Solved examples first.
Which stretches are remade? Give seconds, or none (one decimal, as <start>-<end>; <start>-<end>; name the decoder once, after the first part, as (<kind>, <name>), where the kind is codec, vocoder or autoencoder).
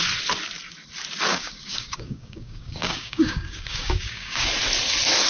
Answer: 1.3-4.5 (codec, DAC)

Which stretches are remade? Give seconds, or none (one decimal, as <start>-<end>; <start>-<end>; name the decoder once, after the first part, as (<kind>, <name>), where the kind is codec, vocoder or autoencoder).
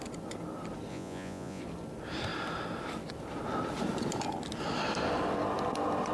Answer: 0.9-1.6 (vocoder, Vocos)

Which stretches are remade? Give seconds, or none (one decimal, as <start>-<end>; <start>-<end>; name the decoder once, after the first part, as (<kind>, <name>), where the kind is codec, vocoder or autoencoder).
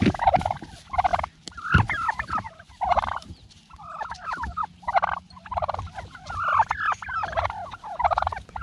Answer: none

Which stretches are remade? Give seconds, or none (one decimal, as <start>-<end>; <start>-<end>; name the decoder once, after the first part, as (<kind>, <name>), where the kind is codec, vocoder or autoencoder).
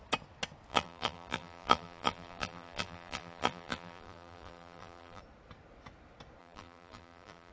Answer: 0.7-5.2 (vocoder, BigVGAN v2); 6.4-7.5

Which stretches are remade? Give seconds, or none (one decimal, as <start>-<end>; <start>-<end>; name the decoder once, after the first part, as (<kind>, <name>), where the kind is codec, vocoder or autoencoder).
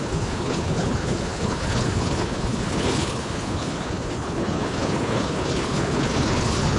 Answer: 0.0-6.8 (codec, HILCodec)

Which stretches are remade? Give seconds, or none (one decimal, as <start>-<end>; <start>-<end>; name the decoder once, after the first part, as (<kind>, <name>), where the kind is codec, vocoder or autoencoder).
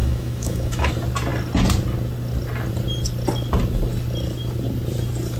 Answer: 0.0-0.9 (autoencoder, DAC-VAE)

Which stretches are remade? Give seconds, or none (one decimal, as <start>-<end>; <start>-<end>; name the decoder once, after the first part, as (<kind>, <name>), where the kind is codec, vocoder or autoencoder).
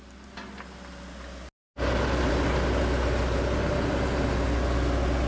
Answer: none